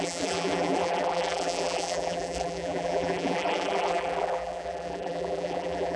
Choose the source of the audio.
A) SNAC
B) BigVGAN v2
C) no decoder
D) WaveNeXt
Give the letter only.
B